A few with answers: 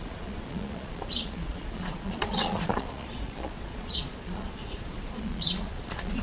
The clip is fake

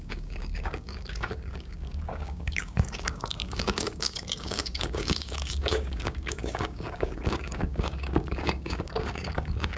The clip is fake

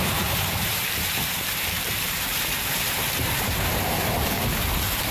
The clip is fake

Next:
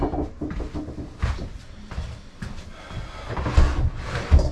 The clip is real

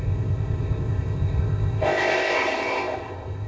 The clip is fake